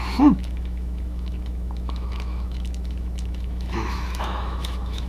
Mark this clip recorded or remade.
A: remade